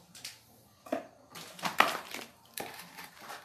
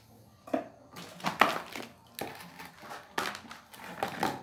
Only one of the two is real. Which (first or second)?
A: second